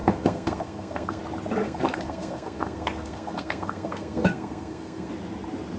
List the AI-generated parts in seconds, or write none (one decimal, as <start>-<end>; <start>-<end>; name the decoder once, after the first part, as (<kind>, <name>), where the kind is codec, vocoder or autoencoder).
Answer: 0.0-1.2 (codec, SNAC); 1.6-5.1